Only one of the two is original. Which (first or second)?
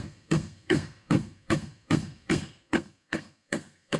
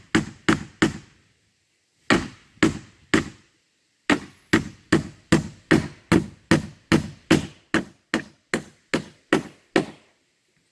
second